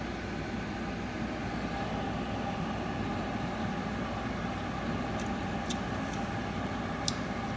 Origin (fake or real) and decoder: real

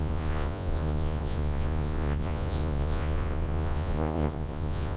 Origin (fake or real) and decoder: fake, vocoder, Vocos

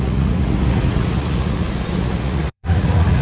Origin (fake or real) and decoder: fake, vocoder, Vocos